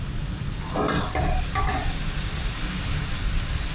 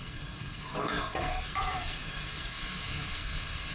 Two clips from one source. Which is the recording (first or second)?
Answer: first